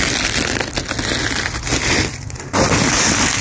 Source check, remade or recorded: recorded